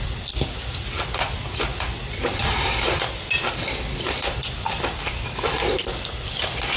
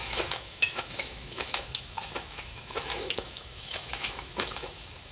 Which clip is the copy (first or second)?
second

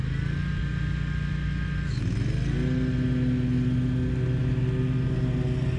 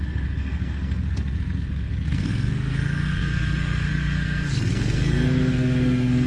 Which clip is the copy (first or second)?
second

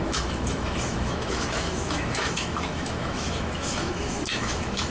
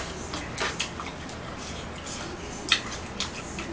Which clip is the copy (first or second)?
first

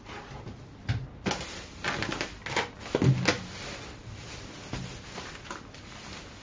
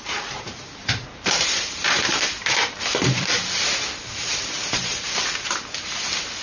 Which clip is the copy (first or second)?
second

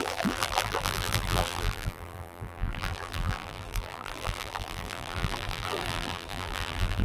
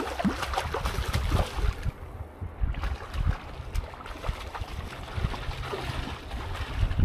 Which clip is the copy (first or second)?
first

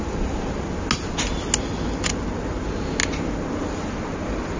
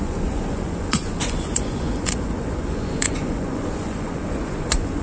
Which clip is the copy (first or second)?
second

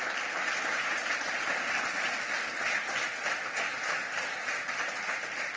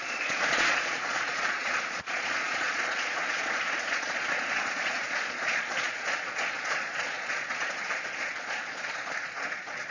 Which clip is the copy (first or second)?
second